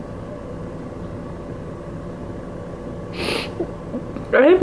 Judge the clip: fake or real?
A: real